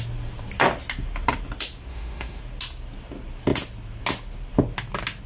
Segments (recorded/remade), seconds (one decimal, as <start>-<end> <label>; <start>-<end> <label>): 0.0-1.9 recorded; 1.9-2.4 remade; 2.4-5.3 recorded